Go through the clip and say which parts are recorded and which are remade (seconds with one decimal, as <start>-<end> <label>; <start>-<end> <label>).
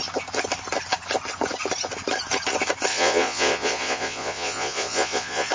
0.0-2.9 recorded; 2.9-5.5 remade